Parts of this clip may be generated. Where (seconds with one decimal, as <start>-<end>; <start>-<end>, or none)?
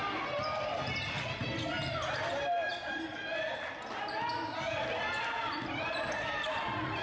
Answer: none